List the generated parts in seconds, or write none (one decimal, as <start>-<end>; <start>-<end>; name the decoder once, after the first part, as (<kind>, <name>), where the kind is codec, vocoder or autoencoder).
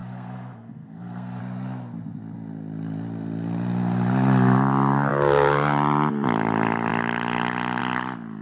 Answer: 0.0-1.4 (codec, SNAC)